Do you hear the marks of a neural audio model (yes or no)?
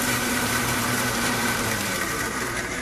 yes